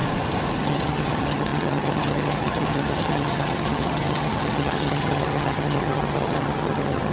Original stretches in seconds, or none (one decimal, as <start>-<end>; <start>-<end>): 0.0-0.6